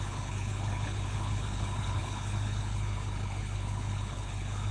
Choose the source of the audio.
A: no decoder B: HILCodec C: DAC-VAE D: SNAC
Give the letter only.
B